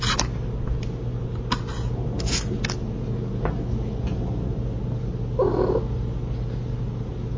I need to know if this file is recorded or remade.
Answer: recorded